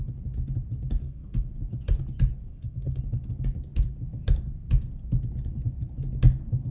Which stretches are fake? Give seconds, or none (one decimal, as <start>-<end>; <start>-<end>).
1.0-1.5; 2.5-3.0